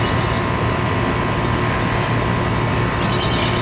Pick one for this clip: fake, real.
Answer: fake